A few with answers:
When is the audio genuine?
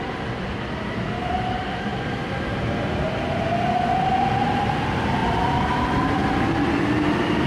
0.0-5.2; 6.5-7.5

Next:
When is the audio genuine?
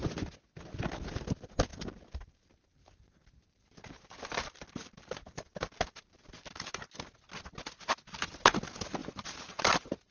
0.0-1.7; 6.9-9.0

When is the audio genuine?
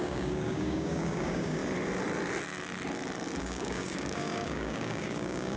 1.6-3.4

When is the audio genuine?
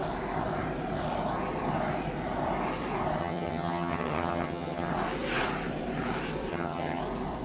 0.0-3.2; 4.9-6.5; 7.0-7.4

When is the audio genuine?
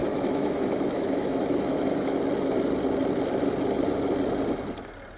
2.2-5.2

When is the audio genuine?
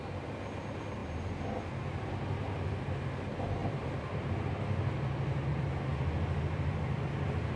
0.0-7.6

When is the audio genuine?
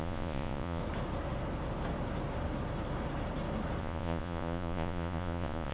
0.8-3.8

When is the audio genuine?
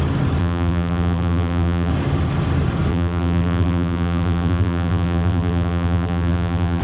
0.0-0.4; 1.9-2.9